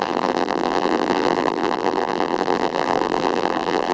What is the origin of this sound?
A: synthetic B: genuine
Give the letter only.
A